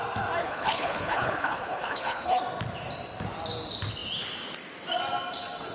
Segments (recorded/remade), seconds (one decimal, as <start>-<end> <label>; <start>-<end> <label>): 0.0-0.4 recorded; 0.4-2.4 remade; 2.4-5.7 recorded